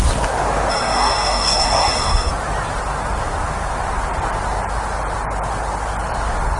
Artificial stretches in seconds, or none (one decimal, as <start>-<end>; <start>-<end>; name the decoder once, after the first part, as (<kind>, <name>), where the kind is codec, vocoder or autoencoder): 0.7-2.3 (codec, SNAC)